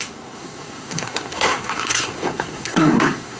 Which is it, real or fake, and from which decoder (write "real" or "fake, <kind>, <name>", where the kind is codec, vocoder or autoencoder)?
fake, codec, SNAC